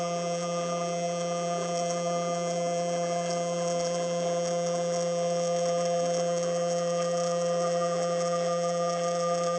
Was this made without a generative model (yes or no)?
no